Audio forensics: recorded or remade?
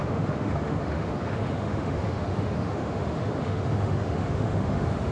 remade